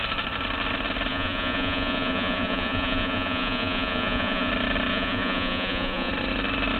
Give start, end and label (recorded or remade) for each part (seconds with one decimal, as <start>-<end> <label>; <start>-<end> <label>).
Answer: 0.0-1.1 recorded; 1.1-4.5 remade; 4.5-4.9 recorded; 4.9-6.1 remade; 6.1-6.8 recorded